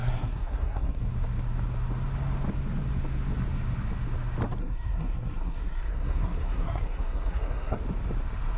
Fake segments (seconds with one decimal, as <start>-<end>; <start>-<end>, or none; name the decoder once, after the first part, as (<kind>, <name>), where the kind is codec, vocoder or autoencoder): 0.0-1.0 (codec, SNAC); 4.6-7.8